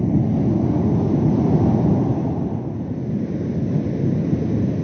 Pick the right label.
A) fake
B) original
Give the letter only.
B